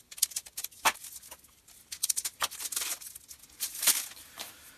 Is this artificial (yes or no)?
no